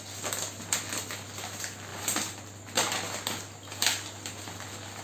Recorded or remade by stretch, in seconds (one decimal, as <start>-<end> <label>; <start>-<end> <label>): 0.0-5.0 recorded